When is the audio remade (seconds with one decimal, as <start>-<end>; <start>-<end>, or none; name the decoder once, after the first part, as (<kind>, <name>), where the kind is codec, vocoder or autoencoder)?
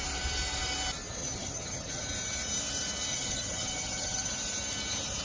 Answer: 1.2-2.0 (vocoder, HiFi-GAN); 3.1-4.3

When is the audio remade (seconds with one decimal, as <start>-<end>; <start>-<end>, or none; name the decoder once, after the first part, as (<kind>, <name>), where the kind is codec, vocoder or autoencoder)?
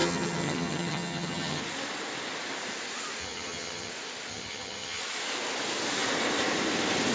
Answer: 0.0-1.6 (vocoder, HiFi-GAN); 3.2-3.9; 4.3-5.0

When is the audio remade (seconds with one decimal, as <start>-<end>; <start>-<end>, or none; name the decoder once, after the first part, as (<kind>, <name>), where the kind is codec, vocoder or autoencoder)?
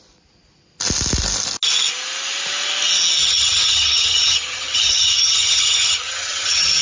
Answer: 3.2-6.8 (vocoder, HiFi-GAN)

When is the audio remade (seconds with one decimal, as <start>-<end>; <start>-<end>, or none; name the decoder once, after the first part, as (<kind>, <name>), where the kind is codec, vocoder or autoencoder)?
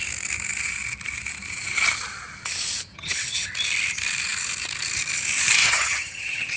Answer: 2.9-3.5 (vocoder, HiFi-GAN); 5.6-6.6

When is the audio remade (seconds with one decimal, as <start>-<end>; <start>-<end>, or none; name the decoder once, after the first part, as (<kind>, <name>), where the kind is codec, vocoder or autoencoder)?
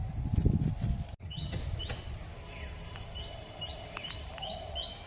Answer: 1.2-1.6 (vocoder, HiFi-GAN)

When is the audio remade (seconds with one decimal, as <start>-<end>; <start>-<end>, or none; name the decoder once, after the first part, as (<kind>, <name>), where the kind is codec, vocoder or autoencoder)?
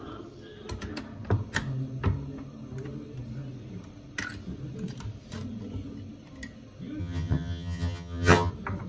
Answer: 7.0-8.5 (vocoder, HiFi-GAN)